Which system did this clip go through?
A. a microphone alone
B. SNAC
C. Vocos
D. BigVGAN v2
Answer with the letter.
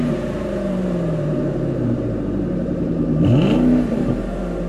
D